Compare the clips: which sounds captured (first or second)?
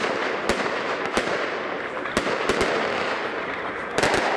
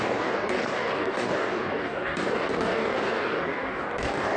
first